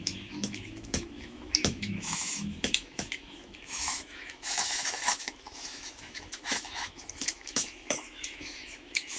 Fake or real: fake